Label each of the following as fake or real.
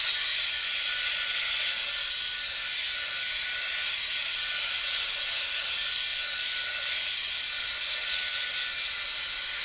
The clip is real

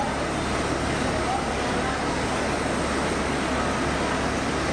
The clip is real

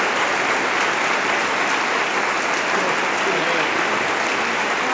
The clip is real